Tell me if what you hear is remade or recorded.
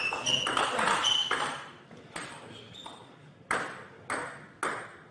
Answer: recorded